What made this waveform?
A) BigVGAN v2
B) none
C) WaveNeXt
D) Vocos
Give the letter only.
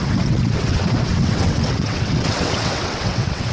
C